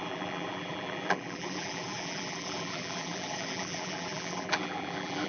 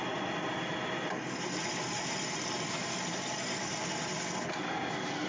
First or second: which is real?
second